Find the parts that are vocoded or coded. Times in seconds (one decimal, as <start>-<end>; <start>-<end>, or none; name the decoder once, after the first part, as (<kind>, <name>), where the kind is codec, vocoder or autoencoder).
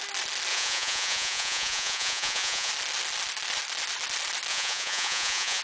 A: 0.5-2.7 (vocoder, Vocos); 4.5-5.6